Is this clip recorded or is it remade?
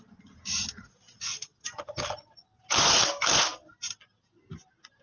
recorded